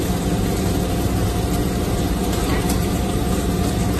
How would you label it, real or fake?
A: fake